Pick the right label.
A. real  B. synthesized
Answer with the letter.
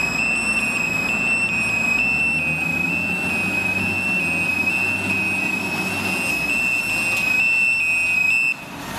A